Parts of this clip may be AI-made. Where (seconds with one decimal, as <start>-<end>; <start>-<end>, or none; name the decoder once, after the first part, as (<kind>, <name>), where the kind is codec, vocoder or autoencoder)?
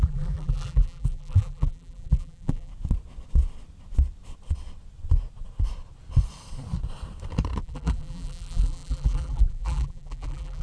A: 0.0-2.7 (vocoder, BigVGAN v2); 7.6-10.6